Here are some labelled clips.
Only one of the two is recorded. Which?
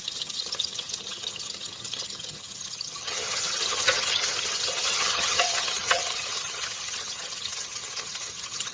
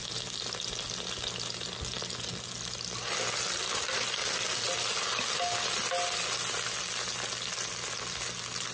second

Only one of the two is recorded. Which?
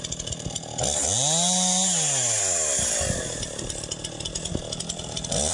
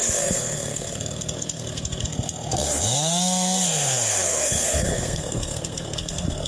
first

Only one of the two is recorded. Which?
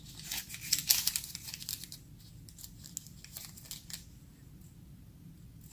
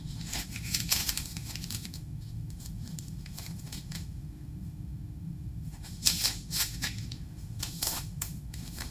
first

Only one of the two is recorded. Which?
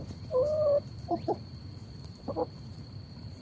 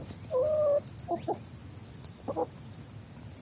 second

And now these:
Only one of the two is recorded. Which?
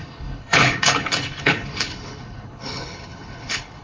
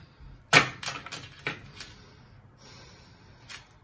second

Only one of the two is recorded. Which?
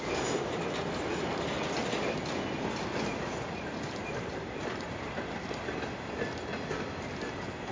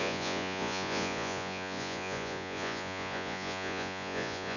first